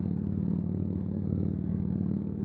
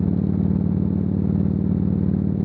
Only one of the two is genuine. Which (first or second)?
second